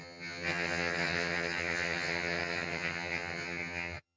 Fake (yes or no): yes